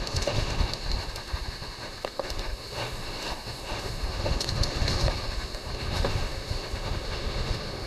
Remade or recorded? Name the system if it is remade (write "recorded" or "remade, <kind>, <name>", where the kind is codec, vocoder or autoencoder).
remade, autoencoder, DAC-VAE